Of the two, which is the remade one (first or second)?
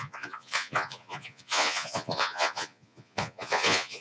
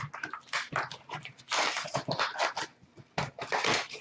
first